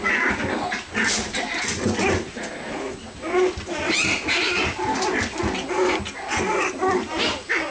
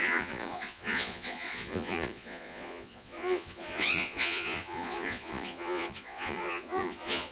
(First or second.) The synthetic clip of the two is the second